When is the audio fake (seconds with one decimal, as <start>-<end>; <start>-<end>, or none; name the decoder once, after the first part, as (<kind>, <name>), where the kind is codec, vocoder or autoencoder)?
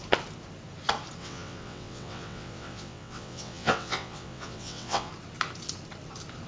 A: 1.2-5.1 (vocoder, WaveNeXt)